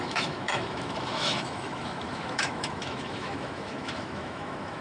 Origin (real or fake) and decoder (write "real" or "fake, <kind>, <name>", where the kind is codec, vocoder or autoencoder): fake, autoencoder, DAC-VAE